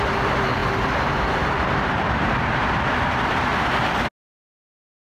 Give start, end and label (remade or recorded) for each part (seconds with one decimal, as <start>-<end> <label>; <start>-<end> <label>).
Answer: 0.0-3.5 remade; 3.5-4.2 recorded; 4.2-5.2 remade